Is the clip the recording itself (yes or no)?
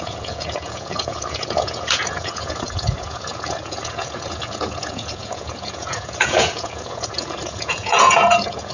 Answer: no